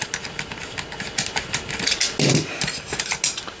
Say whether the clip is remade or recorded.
recorded